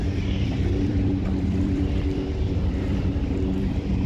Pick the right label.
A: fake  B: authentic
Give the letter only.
A